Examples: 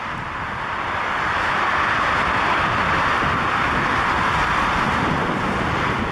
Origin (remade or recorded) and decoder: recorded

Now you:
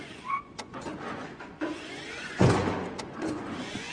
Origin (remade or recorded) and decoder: remade, vocoder, Vocos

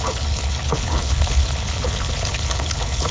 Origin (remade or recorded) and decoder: remade, codec, HILCodec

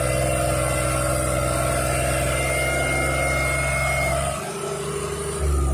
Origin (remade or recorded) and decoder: recorded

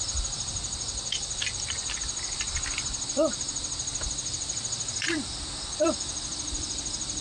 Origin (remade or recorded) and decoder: remade, vocoder, BigVGAN v2